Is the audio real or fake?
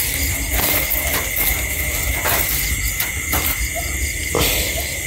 real